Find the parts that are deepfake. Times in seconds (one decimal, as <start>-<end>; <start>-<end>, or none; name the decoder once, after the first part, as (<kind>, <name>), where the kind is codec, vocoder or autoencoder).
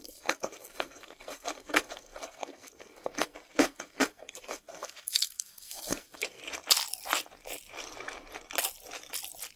0.0-6.4 (codec, SNAC)